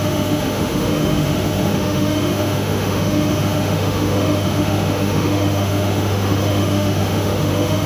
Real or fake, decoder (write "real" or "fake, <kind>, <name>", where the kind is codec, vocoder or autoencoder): fake, autoencoder, DAC-VAE